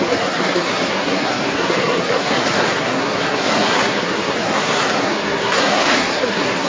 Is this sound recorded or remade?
remade